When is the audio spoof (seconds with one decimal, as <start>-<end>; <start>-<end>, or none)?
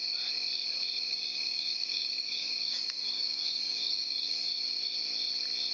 1.1-4.5